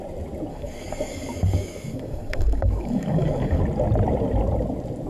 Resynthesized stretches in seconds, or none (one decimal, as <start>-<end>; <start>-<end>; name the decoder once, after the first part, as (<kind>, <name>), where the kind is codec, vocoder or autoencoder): 0.5-3.6 (codec, DAC)